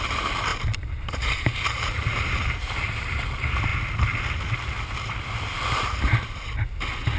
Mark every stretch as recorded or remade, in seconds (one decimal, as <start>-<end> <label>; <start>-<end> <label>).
0.0-0.5 recorded; 0.5-3.2 remade; 3.2-3.7 recorded; 3.7-4.4 remade; 4.4-7.2 recorded